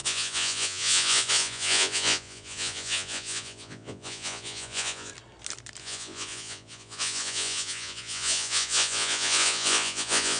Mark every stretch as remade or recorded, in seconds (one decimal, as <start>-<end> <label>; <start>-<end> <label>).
0.0-5.1 remade; 5.1-5.8 recorded; 5.8-10.4 remade